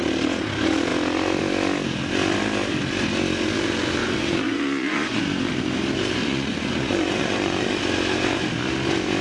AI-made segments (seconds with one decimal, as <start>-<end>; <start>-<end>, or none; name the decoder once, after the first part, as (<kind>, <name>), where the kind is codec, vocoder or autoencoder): 4.0-5.2 (vocoder, Vocos); 6.2-7.8